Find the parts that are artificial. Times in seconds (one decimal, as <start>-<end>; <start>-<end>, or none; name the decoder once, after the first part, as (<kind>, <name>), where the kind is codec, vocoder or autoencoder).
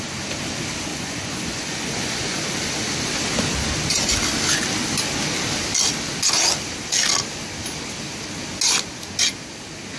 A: 0.9-2.4 (vocoder, Vocos)